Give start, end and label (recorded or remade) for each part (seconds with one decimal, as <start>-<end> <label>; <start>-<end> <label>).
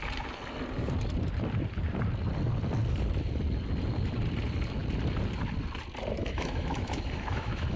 0.0-6.2 recorded; 6.2-7.8 remade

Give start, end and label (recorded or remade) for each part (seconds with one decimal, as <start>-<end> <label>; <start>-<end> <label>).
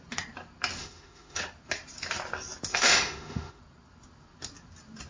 0.0-0.8 recorded; 0.8-1.4 remade; 1.4-2.7 recorded; 2.7-3.6 remade; 3.6-5.1 recorded